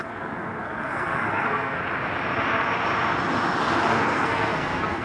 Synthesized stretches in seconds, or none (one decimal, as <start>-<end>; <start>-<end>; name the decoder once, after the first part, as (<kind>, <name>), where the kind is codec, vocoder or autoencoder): 0.0-1.8 (codec, SNAC); 3.9-5.0